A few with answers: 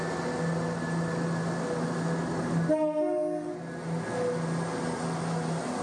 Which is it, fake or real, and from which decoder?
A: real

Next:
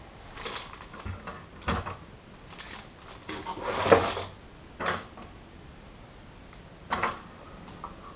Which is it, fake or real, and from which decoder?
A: real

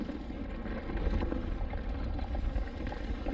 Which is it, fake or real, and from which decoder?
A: real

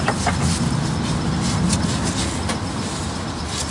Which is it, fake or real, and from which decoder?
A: real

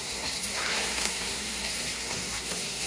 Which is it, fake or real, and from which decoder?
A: fake, codec, SNAC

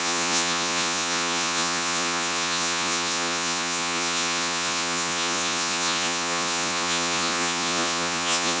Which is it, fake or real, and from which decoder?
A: fake, vocoder, Vocos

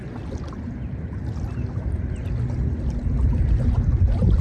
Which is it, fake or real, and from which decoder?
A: real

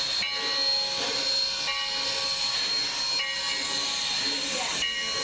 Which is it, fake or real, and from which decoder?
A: real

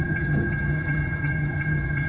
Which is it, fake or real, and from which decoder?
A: fake, vocoder, HiFi-GAN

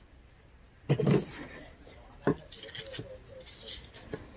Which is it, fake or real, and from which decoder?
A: real